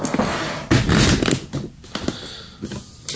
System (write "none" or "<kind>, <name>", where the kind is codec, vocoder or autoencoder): none